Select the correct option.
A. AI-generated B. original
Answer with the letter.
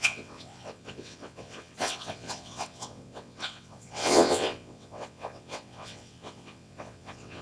A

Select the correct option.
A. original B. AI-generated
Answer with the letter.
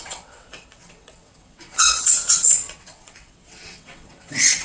B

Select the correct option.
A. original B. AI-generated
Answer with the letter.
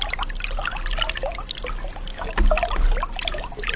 A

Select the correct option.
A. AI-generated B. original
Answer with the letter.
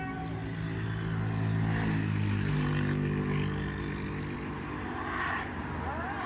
B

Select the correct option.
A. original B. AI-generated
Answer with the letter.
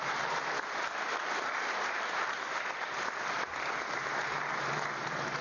A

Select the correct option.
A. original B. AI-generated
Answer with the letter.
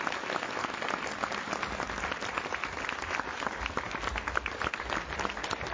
A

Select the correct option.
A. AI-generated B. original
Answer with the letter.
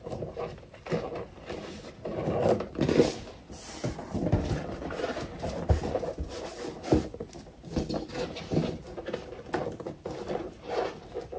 B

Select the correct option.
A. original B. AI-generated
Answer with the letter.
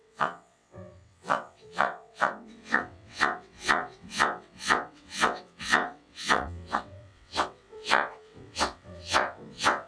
B